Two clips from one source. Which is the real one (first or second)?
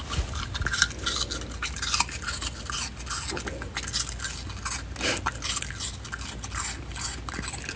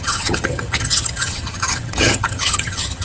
first